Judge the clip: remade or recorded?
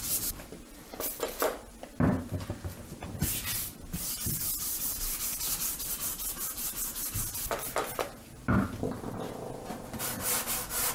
recorded